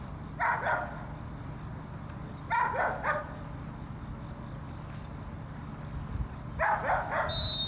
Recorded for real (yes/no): yes